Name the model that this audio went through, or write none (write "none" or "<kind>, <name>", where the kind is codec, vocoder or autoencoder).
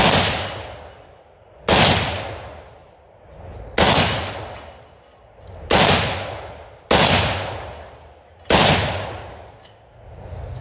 none